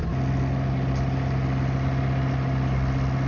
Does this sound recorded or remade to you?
recorded